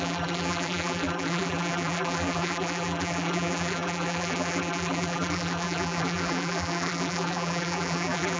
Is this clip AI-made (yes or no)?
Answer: yes